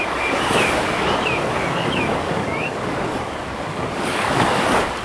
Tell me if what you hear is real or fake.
fake